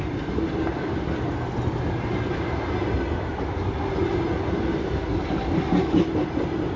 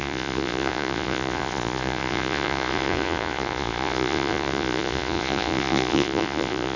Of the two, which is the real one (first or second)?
first